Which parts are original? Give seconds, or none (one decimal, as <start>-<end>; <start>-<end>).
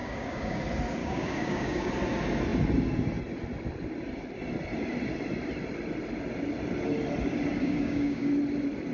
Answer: 0.6-1.0; 1.9-7.6; 8.3-8.9